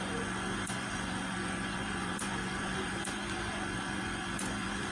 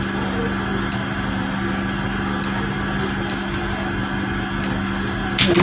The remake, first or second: first